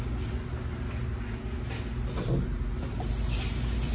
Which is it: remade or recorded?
recorded